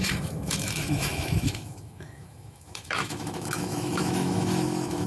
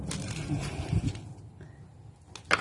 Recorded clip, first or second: second